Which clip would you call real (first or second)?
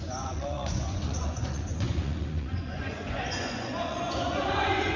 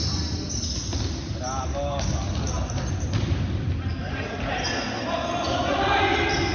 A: second